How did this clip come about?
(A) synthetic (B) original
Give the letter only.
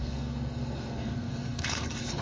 A